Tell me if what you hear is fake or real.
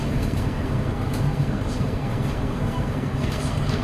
fake